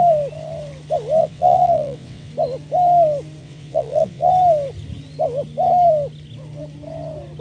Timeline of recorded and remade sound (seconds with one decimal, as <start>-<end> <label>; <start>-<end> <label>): 0.0-1.2 recorded; 1.2-2.3 remade; 2.3-3.4 recorded; 3.4-4.3 remade; 4.3-7.4 recorded